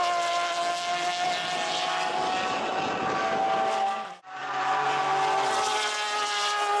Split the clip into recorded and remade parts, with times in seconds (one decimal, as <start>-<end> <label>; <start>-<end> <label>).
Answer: 0.0-6.8 recorded